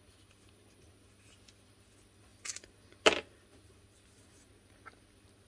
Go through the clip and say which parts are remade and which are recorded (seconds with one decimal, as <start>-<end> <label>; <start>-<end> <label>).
0.0-5.5 recorded